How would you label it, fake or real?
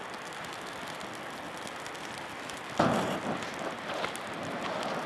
real